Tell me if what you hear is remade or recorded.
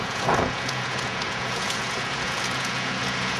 remade